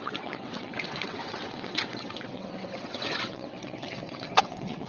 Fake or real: fake